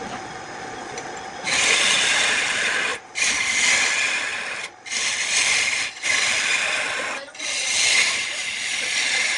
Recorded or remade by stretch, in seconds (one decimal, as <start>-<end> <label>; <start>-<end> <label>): 0.0-9.4 recorded